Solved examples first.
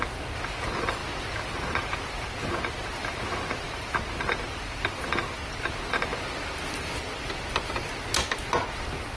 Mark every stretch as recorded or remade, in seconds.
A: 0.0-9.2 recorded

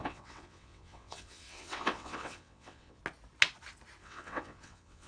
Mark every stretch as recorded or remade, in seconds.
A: 0.0-3.0 remade; 3.0-4.0 recorded; 4.0-5.1 remade

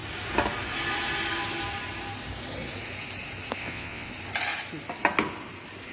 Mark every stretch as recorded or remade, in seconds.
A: 0.0-3.6 recorded; 3.6-4.1 remade; 4.1-5.9 recorded